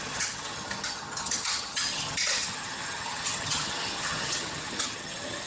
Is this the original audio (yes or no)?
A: no